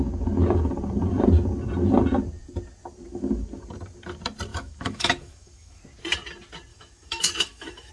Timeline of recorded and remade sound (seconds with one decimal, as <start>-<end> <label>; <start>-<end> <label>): 0.0-4.5 recorded; 4.5-5.8 remade; 5.8-6.7 recorded; 6.7-7.9 remade